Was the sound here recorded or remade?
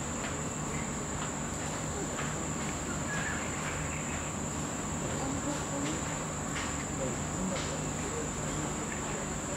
remade